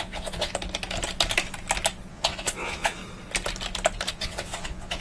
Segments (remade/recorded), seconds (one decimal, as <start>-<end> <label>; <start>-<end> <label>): 0.0-0.5 remade; 0.5-2.1 recorded; 2.1-3.0 remade; 3.0-4.1 recorded; 4.1-5.0 remade